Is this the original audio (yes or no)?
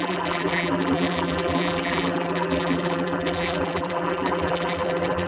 no